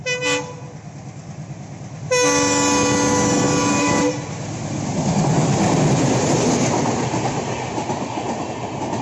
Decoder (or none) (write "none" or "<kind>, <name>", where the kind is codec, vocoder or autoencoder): none